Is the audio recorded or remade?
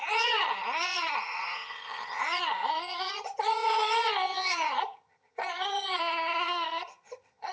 remade